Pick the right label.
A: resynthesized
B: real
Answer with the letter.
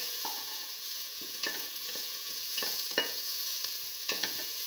A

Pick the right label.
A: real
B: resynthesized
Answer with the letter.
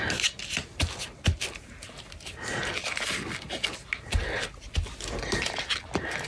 A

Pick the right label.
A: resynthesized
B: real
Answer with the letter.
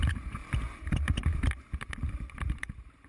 A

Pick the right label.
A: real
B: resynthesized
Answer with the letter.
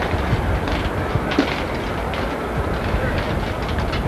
A